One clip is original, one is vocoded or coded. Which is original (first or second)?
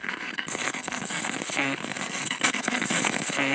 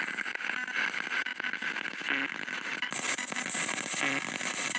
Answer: second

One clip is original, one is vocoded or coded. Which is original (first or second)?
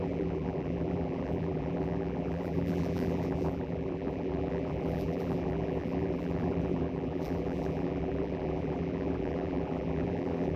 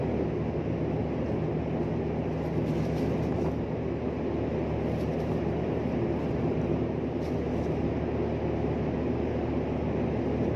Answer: second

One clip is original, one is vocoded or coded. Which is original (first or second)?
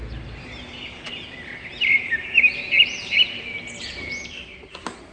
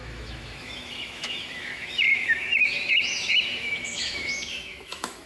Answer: first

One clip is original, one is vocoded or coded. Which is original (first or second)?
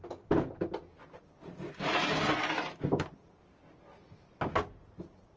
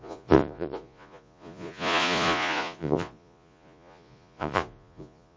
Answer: first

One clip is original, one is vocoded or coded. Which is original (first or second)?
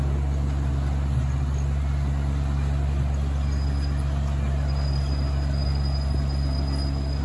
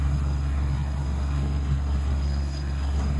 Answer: first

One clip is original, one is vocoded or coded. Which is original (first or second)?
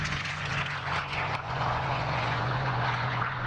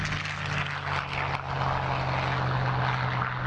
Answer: second